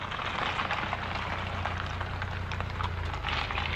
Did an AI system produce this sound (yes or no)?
no